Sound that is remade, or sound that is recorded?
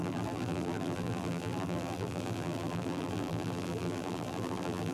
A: remade